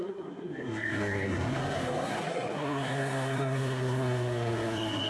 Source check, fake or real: fake